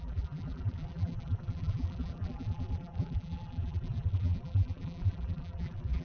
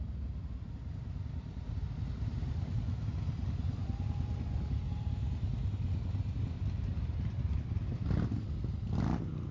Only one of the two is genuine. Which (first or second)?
second